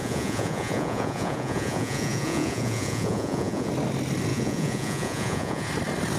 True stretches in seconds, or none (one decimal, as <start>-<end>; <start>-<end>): 3.7-4.3; 5.7-6.2